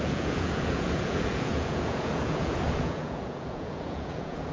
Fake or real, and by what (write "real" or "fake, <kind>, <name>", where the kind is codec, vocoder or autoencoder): fake, vocoder, Vocos